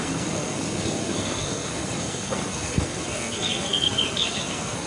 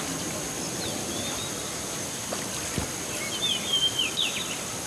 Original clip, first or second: second